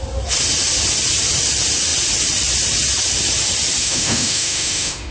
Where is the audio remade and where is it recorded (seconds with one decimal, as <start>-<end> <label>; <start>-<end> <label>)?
0.0-3.8 recorded; 3.8-5.1 remade